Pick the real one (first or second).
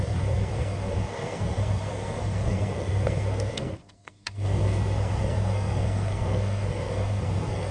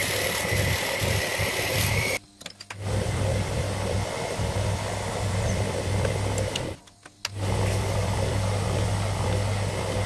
second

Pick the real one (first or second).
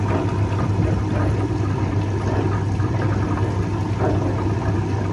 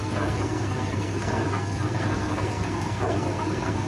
first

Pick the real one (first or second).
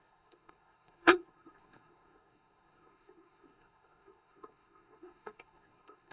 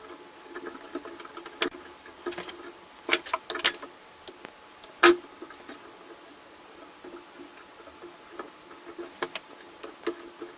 second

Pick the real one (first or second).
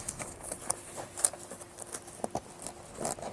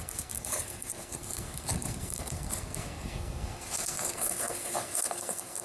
first